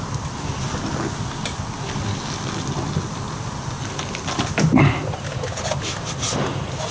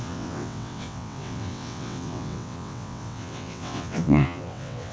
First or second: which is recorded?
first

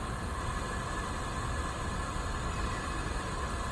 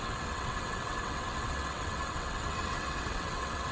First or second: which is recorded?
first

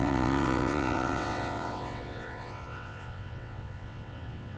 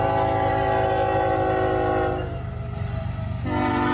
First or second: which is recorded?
second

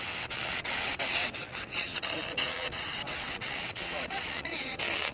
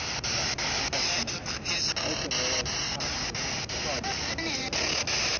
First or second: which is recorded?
second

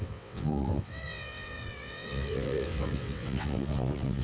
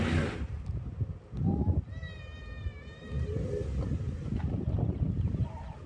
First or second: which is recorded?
second